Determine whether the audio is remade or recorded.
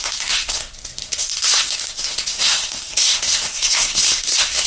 remade